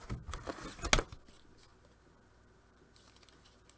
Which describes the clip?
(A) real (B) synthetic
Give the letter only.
A